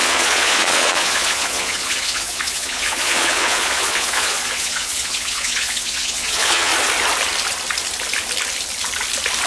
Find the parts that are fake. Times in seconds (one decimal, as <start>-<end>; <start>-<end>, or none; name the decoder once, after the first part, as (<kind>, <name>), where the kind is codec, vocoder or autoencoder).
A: 0.0-6.7 (vocoder, Vocos)